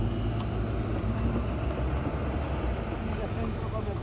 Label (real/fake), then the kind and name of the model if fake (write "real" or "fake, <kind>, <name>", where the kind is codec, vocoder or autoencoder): real